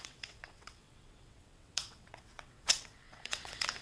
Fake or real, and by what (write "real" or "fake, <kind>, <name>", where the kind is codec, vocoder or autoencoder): fake, vocoder, WaveNeXt